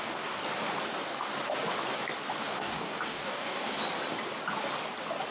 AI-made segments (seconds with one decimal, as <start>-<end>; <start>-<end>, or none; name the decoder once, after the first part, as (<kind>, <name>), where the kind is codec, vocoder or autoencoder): 0.0-0.4 (codec, DAC); 2.4-3.8